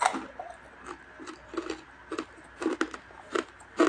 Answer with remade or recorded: recorded